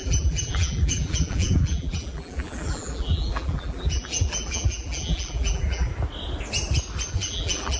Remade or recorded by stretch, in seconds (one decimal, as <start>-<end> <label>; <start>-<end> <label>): 0.0-5.9 remade; 5.9-7.1 recorded; 7.1-7.8 remade